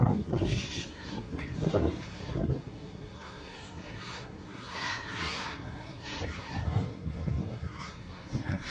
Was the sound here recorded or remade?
remade